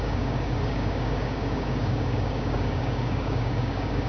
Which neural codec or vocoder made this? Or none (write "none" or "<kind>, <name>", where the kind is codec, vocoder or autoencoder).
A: codec, DAC